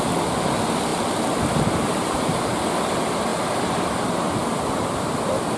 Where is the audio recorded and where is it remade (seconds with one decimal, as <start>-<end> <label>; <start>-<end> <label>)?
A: 0.0-5.6 recorded